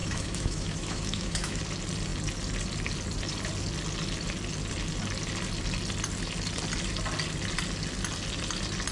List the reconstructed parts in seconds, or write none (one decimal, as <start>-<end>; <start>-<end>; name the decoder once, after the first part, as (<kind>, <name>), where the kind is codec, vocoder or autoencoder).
0.0-1.6 (autoencoder, DAC-VAE)